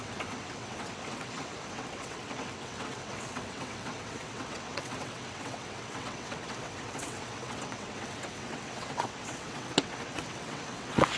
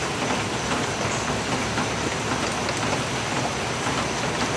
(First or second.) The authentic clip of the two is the second